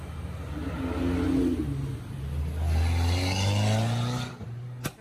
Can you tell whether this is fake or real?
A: real